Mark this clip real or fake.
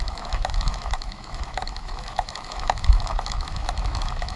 fake